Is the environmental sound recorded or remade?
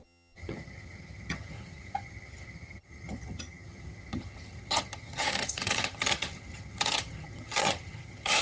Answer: remade